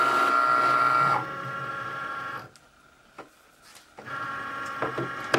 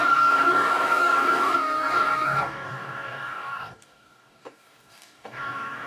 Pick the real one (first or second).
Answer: first